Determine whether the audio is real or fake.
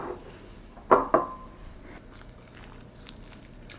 real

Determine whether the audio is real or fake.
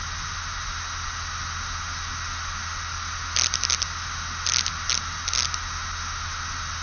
real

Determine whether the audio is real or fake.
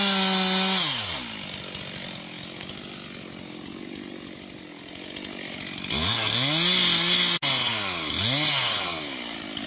real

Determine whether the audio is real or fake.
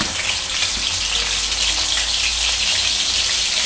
real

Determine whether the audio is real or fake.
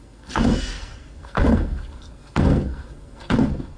fake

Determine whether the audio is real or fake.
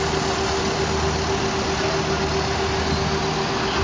real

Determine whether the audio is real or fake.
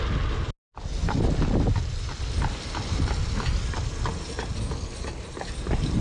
real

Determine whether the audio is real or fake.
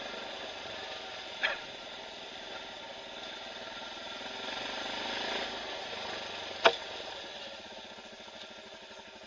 real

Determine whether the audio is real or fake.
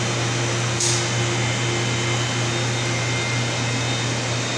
real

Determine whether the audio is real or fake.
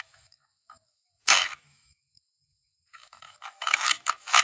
fake